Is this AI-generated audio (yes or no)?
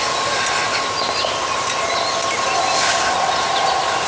no